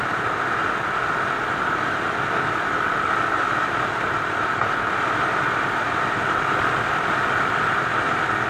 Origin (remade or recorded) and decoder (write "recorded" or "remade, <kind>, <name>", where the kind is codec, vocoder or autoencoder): recorded